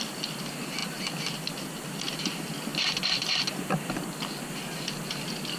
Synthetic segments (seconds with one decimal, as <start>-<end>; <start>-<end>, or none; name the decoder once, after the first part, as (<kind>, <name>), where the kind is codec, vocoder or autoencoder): 2.7-4.0 (vocoder, BigVGAN v2)